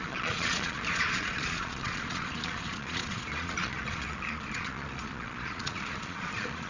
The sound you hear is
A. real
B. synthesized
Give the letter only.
B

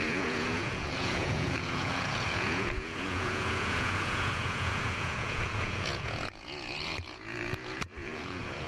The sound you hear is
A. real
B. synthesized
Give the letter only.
B